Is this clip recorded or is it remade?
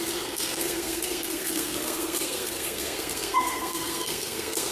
remade